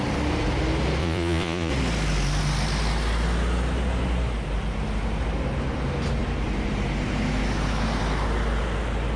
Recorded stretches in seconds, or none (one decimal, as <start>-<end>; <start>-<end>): 0.0-1.0; 1.7-9.2